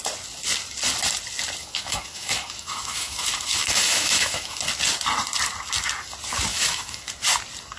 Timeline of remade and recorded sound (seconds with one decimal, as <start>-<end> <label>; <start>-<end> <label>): 0.0-1.6 recorded; 1.6-4.6 remade; 4.6-6.5 recorded; 6.5-7.1 remade; 7.1-7.8 recorded